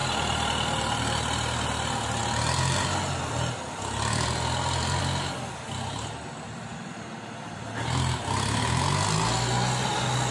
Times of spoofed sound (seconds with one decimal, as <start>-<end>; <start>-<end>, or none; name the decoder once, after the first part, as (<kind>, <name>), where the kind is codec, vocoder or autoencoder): 0.0-1.0 (vocoder, BigVGAN v2); 2.2-5.0; 6.7-7.7